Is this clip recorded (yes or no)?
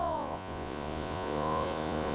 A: no